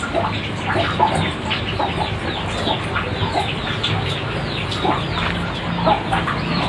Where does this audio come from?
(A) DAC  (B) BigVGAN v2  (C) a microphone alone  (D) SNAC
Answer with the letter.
C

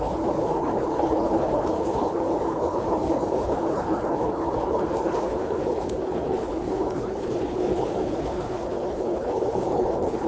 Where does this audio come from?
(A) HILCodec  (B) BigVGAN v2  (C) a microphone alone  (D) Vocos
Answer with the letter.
A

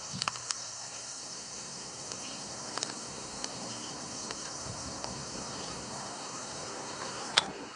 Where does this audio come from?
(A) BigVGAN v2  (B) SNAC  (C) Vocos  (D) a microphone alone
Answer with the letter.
B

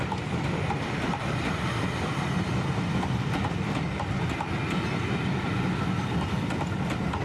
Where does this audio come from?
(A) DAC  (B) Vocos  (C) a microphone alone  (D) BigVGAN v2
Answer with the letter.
C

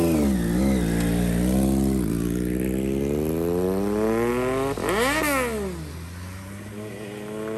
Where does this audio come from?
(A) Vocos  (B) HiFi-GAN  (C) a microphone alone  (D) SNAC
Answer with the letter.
C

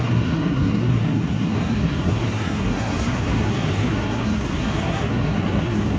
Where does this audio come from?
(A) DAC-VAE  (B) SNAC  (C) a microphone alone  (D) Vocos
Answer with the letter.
B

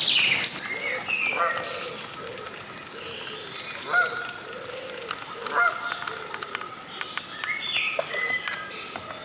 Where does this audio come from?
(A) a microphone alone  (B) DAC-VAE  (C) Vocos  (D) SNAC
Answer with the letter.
A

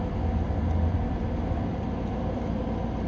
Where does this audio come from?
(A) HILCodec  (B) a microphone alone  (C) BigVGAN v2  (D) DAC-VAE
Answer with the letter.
C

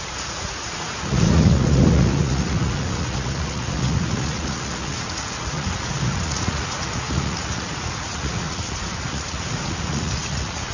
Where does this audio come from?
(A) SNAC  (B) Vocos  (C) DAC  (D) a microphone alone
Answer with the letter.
B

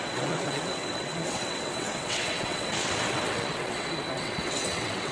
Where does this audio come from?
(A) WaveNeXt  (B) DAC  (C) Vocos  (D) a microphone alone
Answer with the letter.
A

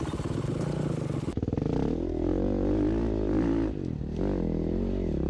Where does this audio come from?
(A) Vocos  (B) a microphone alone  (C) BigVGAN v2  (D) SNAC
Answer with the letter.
B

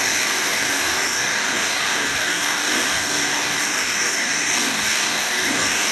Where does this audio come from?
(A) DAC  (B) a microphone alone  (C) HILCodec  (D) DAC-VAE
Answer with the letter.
A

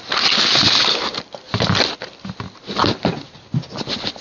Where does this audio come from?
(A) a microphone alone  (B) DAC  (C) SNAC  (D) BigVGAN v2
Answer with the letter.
A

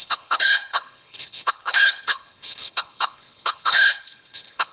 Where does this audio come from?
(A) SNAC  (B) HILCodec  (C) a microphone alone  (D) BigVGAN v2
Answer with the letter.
B